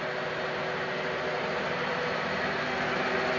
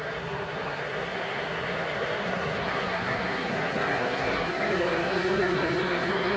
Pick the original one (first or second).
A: first